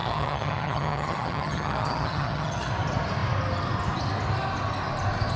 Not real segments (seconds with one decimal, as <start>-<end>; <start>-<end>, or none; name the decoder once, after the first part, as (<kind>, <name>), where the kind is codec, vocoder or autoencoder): 0.0-2.7 (vocoder, HiFi-GAN)